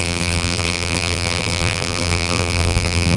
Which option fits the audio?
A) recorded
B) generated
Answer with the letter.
B